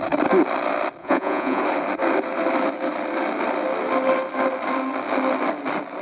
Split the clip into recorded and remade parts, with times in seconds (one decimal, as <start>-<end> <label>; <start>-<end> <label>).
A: 0.0-1.0 recorded; 1.0-1.6 remade; 1.6-6.0 recorded